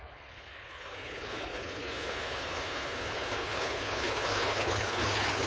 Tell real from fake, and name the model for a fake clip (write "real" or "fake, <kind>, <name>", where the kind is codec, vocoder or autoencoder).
fake, codec, HILCodec